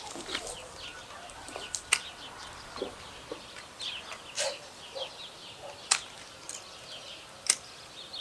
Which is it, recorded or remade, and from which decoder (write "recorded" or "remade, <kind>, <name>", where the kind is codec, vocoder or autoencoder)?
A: recorded